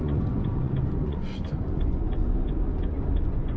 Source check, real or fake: fake